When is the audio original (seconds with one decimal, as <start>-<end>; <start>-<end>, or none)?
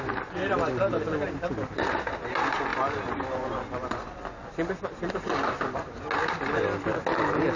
0.0-7.6